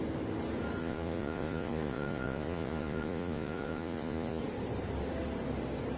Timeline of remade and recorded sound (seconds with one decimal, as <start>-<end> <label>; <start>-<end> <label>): 0.0-0.8 recorded; 0.8-4.4 remade; 4.4-6.0 recorded